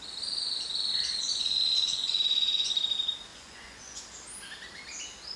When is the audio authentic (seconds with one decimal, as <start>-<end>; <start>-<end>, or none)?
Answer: 0.0-1.3; 2.7-3.3; 4.0-5.4